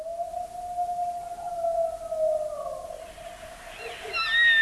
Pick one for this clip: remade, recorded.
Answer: recorded